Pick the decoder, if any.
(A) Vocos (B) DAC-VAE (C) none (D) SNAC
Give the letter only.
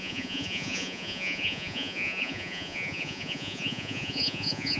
A